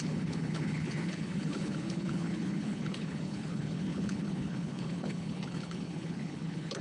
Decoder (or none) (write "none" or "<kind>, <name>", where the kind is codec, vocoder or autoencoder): codec, HILCodec